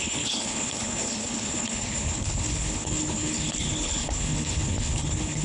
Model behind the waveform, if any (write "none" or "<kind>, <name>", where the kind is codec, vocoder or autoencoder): codec, HILCodec